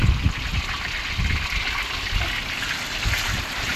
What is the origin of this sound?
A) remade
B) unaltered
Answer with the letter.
B